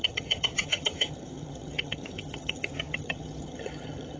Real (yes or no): no